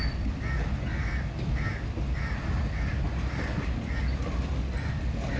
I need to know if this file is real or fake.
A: real